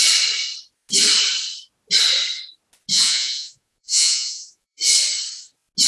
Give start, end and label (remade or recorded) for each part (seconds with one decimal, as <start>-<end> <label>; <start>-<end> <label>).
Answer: 0.0-2.9 recorded; 2.9-4.8 remade; 4.8-5.9 recorded